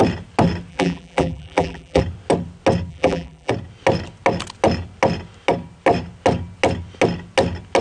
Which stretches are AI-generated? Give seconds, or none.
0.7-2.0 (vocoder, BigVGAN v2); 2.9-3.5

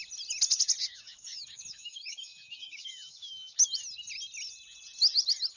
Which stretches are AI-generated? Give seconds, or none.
0.9-3.8 (autoencoder, DAC-VAE)

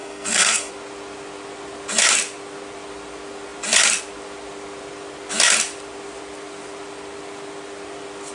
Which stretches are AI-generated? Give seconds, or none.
0.0-0.7 (codec, SNAC)

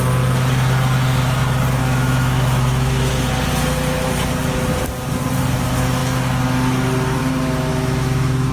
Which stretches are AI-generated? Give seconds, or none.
1.8-3.1 (autoencoder, DAC-VAE); 7.7-8.5

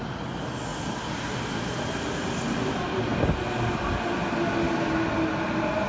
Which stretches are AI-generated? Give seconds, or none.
none

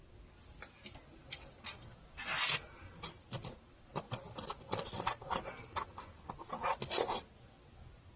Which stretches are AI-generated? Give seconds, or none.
none

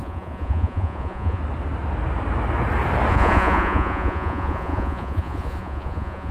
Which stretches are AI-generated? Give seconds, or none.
0.0-1.4 (vocoder, Vocos); 3.1-6.3

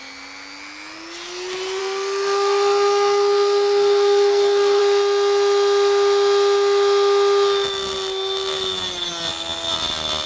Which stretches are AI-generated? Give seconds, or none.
1.8-4.8 (codec, SNAC)